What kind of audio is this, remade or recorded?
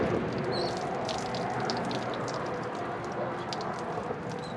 recorded